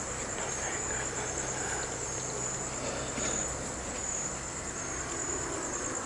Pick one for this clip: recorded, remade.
recorded